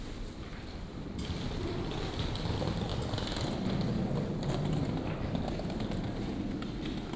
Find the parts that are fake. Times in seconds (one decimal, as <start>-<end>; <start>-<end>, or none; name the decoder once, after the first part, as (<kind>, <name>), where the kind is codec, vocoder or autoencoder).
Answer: 0.0-2.9 (vocoder, BigVGAN v2)